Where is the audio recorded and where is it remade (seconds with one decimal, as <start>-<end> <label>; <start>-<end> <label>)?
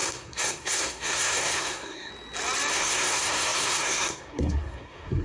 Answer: 0.0-2.1 remade; 2.1-2.7 recorded; 2.7-5.2 remade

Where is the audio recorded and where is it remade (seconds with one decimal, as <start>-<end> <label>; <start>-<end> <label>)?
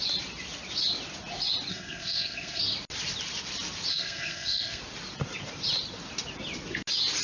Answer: 0.0-1.7 recorded; 1.7-2.6 remade; 2.6-3.9 recorded; 3.9-4.8 remade; 4.8-7.2 recorded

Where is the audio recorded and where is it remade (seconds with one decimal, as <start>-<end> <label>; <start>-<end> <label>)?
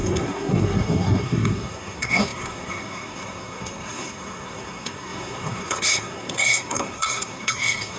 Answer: 0.0-8.0 remade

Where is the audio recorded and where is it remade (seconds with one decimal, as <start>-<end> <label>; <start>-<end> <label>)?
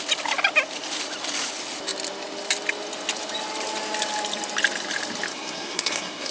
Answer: 0.0-5.3 recorded; 5.3-6.3 remade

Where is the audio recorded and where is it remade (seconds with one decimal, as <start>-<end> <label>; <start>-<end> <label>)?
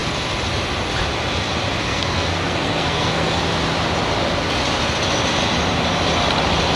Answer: 0.0-1.8 recorded; 1.8-3.4 remade; 3.4-6.8 recorded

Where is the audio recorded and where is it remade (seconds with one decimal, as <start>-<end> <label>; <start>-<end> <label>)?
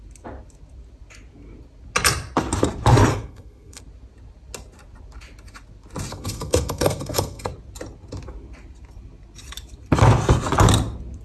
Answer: 0.0-3.1 recorded; 3.1-3.8 remade; 3.8-6.1 recorded; 6.1-7.5 remade; 7.5-11.2 recorded